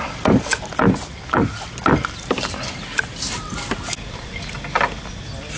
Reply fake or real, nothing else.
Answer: real